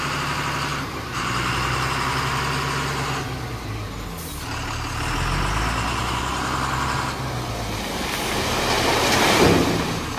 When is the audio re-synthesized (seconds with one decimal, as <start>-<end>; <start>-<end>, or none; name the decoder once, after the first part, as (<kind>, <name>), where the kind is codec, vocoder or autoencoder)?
0.7-1.5 (vocoder, BigVGAN v2)

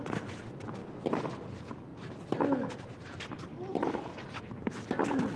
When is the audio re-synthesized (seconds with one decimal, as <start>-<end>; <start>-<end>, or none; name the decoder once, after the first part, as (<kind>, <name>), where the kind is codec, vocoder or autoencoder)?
none

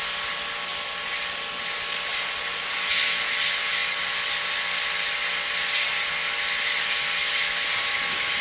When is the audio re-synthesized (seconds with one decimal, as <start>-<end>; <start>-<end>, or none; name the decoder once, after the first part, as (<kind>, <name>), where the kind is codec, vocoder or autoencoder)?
none